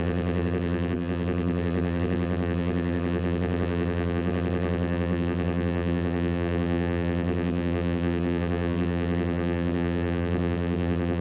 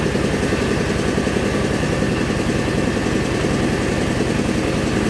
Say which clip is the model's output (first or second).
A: first